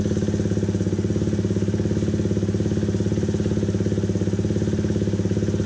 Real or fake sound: real